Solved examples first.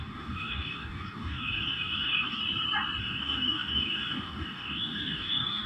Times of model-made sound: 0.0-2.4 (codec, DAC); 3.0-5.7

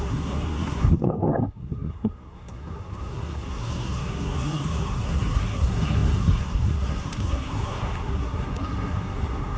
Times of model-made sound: 0.0-9.6 (codec, SNAC)

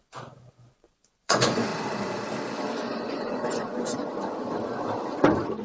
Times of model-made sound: 0.0-1.7 (vocoder, Vocos); 3.1-4.0

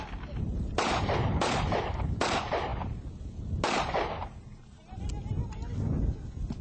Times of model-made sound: 0.5-1.9 (vocoder, BigVGAN v2); 4.5-5.1